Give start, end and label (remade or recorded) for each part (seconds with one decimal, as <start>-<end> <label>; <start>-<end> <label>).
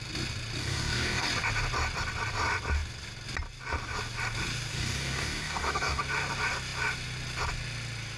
0.0-0.6 recorded; 0.6-1.3 remade; 1.3-4.7 recorded; 4.7-6.0 remade; 6.0-8.2 recorded